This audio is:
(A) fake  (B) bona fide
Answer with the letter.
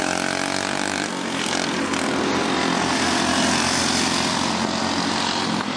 B